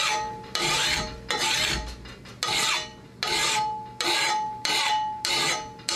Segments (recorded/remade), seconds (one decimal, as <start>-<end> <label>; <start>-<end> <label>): 0.0-6.0 recorded

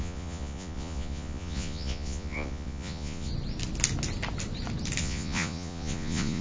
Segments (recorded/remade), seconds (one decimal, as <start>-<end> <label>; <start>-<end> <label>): 0.0-3.3 remade; 3.3-5.0 recorded; 5.0-6.4 remade

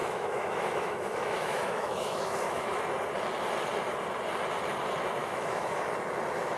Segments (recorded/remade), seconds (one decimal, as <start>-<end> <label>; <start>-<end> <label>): 0.0-2.8 remade; 2.8-5.2 recorded; 5.2-5.8 remade; 5.8-6.6 recorded

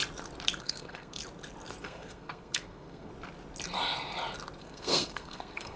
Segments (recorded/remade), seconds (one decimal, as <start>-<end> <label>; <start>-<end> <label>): 0.0-0.6 recorded; 0.6-1.2 remade; 1.2-1.8 recorded; 1.8-3.1 remade; 3.1-4.6 recorded; 4.6-5.8 remade

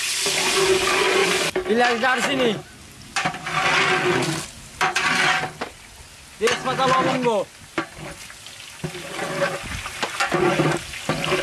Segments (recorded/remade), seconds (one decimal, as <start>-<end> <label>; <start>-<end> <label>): 0.0-11.4 recorded